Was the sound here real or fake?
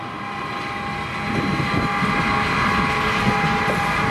real